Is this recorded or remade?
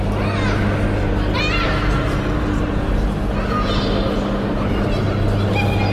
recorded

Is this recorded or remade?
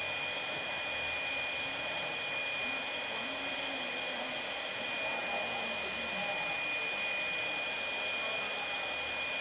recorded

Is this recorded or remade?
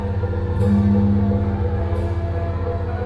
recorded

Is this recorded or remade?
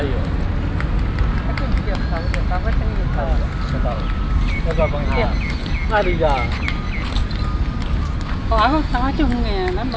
recorded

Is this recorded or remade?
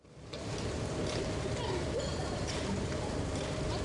remade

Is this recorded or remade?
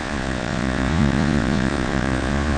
remade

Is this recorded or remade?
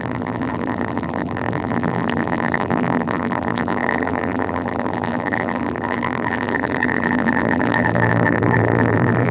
remade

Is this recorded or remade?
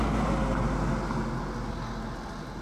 recorded